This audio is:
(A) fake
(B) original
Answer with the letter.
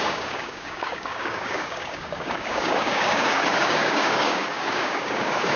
A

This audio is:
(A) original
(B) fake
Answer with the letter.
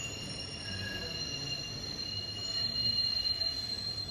A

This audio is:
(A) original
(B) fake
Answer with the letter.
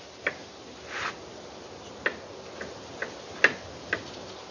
A